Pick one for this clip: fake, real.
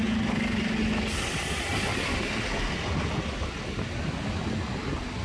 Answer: real